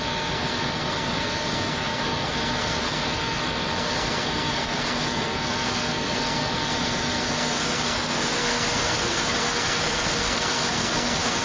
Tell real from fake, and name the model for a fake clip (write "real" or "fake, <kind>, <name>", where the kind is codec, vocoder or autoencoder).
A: fake, codec, SNAC